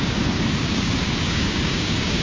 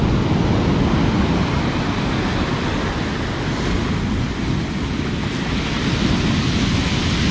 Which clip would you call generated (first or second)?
first